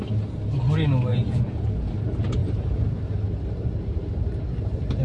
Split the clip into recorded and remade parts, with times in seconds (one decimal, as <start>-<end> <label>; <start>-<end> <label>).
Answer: 0.0-1.1 recorded; 1.1-1.9 remade; 1.9-5.0 recorded